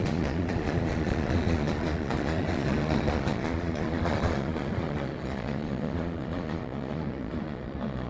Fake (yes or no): yes